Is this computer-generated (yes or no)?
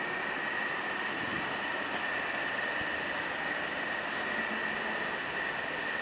no